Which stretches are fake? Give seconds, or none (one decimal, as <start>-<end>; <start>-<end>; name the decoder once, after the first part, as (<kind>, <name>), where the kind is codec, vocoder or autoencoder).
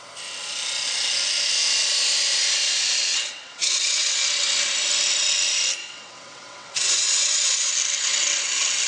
3.0-4.2 (vocoder, WaveNeXt); 5.8-7.7